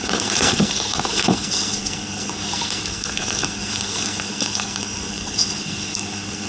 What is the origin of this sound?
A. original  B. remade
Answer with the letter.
B